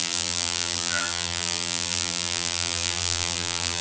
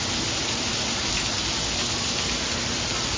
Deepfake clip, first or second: first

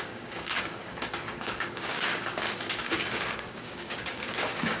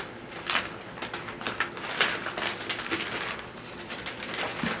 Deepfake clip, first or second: first